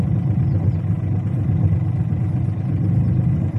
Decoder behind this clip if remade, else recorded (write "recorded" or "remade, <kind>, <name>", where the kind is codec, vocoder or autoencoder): recorded